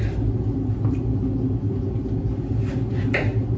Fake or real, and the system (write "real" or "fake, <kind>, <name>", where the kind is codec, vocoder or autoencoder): real